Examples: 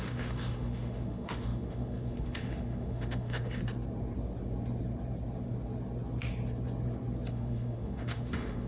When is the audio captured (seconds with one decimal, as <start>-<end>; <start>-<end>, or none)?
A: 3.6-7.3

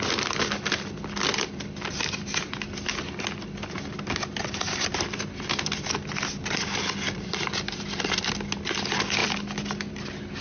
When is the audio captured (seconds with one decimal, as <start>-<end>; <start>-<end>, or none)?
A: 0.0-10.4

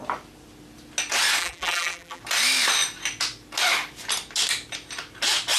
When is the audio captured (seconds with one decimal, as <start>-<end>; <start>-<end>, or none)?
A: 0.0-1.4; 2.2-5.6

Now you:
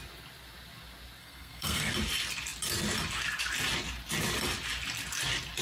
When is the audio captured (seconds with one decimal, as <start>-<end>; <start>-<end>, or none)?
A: 0.0-1.2; 1.9-5.6

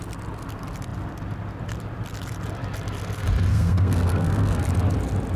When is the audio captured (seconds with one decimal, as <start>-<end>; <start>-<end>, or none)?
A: 0.0-3.5; 4.6-5.4

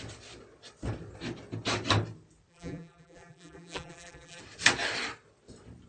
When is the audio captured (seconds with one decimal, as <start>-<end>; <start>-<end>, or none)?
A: 0.0-2.5; 4.4-5.9

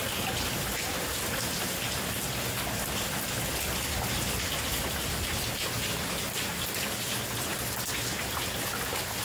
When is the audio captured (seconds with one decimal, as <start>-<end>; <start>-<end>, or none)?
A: 0.0-9.2